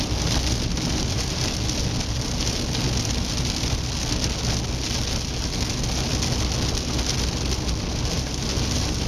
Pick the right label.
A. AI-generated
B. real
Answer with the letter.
B